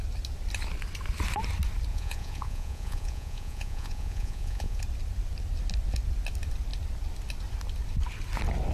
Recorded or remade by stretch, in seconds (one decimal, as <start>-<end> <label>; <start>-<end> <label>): 0.0-1.9 recorded; 1.9-4.8 remade; 4.8-8.7 recorded